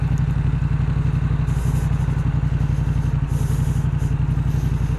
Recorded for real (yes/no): yes